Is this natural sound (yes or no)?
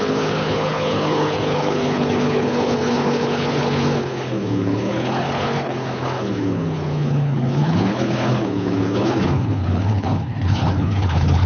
no